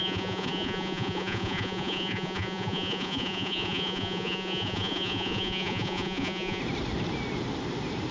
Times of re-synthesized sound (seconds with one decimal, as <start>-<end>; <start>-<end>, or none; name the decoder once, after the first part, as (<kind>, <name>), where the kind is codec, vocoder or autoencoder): 0.0-6.6 (vocoder, Vocos)